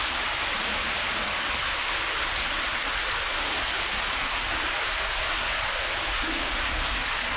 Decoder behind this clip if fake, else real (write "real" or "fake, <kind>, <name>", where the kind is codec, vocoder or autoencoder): real